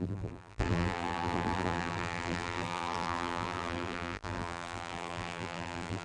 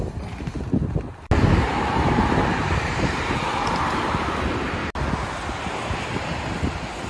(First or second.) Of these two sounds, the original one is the second